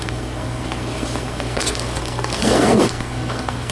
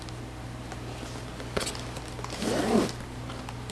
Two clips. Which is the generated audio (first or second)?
first